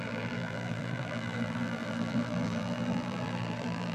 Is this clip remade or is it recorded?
remade